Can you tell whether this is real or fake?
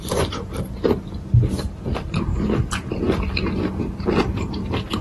real